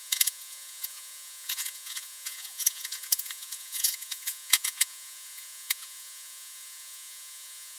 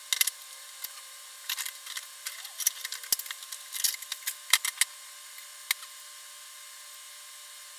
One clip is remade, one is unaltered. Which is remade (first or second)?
first